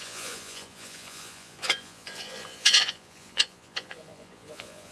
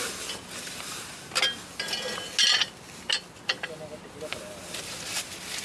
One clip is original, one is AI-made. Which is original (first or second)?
second